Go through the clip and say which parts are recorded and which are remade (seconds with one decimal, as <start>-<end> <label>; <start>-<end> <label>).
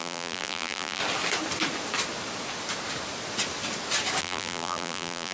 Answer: 0.0-1.0 remade; 1.0-4.2 recorded; 4.2-5.3 remade